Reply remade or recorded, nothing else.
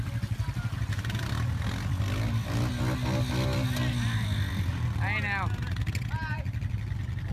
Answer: recorded